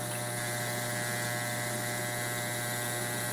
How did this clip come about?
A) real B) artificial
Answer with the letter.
A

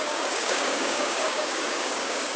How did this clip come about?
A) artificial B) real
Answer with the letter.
A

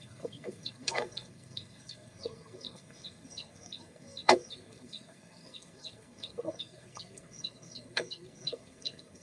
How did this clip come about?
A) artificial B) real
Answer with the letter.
A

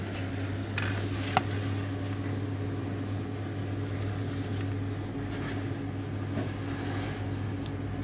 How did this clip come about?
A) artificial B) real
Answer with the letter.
B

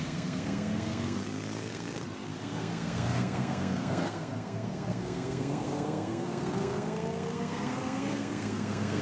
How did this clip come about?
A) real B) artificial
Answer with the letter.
B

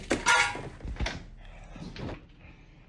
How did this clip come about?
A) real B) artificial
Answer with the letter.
A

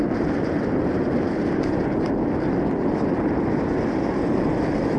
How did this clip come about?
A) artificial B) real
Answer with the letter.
B